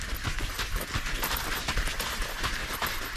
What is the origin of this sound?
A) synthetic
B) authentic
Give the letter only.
B